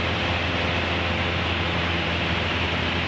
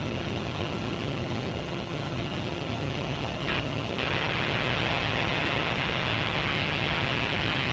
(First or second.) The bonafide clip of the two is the first